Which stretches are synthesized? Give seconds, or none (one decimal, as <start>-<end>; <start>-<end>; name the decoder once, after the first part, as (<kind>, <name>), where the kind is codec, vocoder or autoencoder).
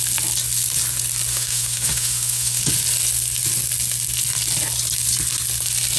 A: 1.3-2.6 (autoencoder, DAC-VAE)